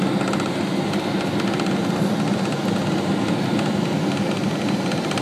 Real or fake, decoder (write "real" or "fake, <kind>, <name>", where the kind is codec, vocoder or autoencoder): real